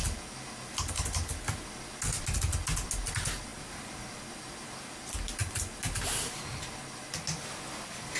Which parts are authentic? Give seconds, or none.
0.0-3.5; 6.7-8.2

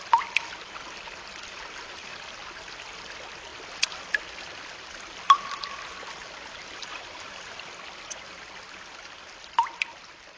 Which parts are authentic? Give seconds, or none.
0.0-6.9; 7.5-10.4